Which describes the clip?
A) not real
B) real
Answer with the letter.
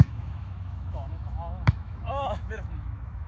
A